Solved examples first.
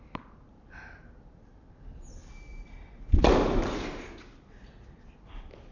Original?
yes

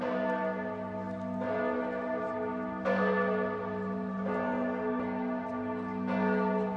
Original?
yes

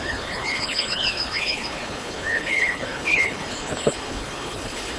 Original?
no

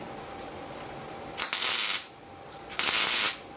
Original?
yes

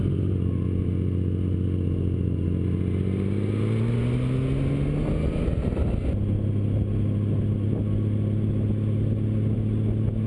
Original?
yes